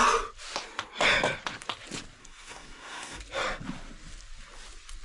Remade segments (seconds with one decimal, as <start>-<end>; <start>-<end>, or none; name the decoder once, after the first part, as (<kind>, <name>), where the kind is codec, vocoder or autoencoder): 2.2-3.2 (codec, SNAC)

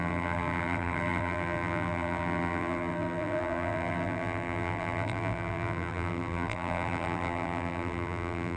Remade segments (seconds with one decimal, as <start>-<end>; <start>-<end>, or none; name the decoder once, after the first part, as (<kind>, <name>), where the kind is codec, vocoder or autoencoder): 0.0-8.6 (vocoder, BigVGAN v2)

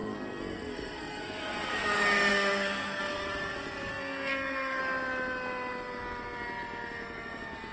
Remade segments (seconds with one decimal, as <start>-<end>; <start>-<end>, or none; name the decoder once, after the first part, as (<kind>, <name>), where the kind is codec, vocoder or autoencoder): 0.0-1.2 (codec, SNAC); 2.3-3.0; 3.9-4.8